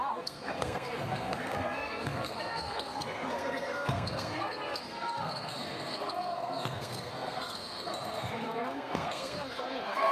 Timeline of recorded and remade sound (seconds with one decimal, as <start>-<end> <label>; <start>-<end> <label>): 0.0-10.1 remade

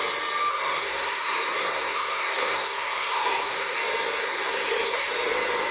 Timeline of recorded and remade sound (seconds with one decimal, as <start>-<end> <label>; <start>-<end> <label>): 0.0-0.5 recorded; 0.5-3.8 remade; 3.8-4.2 recorded; 4.2-5.1 remade; 5.1-5.7 recorded

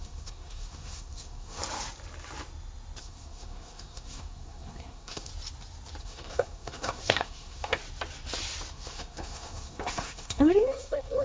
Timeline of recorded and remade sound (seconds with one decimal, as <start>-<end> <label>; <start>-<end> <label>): 0.0-1.6 remade; 1.6-3.0 recorded; 3.0-5.3 remade; 5.3-6.0 recorded; 6.0-7.8 remade; 7.8-8.7 recorded; 8.7-11.2 remade

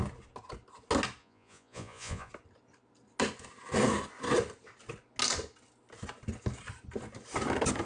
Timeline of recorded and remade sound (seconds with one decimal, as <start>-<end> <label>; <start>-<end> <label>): 0.0-1.2 recorded; 1.2-2.3 remade; 2.3-7.8 recorded

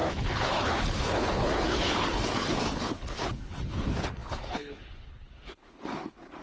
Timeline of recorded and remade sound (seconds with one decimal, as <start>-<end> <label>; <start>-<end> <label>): 0.0-6.4 remade